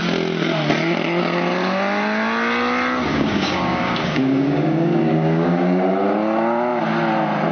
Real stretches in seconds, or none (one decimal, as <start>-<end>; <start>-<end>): 0.0-3.1; 5.9-7.5

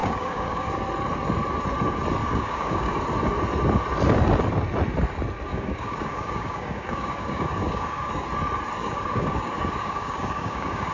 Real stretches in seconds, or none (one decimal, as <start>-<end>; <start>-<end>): 0.7-2.2; 3.0-5.5; 8.1-8.8

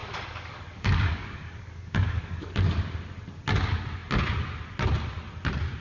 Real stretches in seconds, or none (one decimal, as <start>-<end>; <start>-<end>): 2.5-5.8

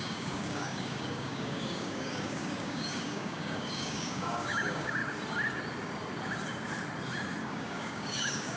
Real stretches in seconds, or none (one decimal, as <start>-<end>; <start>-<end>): 5.0-7.4

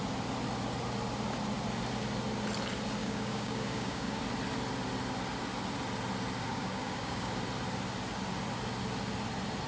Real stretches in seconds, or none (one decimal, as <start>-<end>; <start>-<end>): 0.0-3.0; 4.2-6.5; 7.3-9.7